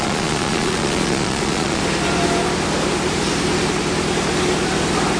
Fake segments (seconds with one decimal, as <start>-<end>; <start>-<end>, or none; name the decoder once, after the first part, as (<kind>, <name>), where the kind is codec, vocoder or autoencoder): 0.0-1.8 (vocoder, Vocos)